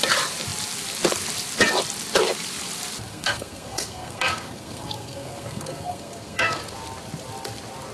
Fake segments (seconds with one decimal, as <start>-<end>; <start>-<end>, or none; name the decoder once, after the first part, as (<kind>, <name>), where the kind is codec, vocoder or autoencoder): 3.1-6.6 (codec, SNAC)